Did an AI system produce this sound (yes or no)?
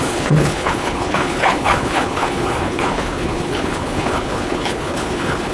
yes